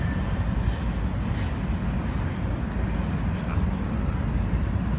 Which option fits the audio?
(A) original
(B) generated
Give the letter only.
A